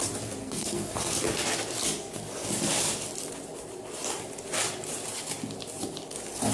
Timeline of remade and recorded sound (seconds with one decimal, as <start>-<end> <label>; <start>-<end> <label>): 0.0-0.4 recorded; 0.4-1.1 remade; 1.1-6.5 recorded